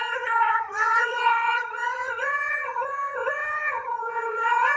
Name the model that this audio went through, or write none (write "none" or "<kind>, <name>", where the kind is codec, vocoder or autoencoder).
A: vocoder, HiFi-GAN